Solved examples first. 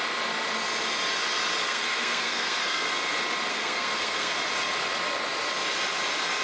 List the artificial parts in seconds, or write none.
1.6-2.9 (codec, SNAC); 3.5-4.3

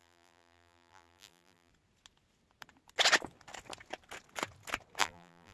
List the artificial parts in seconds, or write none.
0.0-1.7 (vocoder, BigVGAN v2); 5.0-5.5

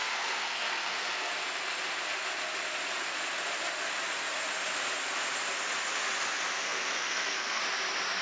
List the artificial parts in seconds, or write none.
0.0-1.3 (codec, SNAC); 6.6-7.6